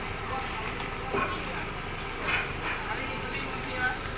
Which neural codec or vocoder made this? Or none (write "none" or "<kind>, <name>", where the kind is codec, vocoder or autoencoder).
none